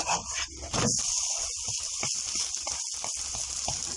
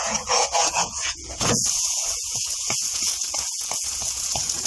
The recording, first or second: first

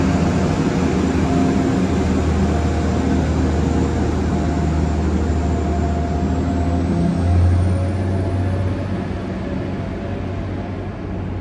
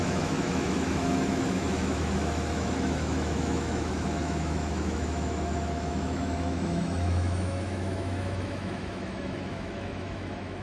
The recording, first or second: first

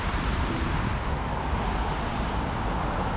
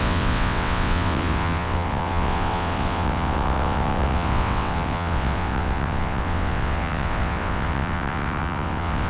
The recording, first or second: first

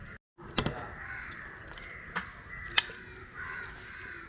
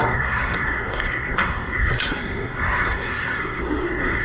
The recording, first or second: first